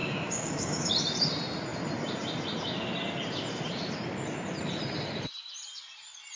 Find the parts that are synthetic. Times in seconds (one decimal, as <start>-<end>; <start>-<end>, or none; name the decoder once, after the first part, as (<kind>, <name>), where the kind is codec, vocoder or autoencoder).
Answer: 0.0-0.9 (codec, DAC)